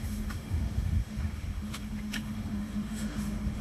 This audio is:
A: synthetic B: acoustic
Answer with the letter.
A